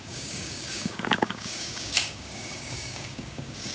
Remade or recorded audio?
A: remade